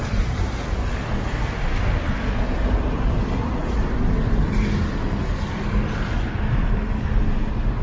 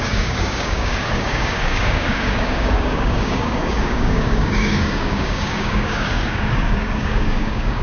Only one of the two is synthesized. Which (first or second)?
second